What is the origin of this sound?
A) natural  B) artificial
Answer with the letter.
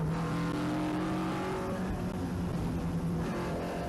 A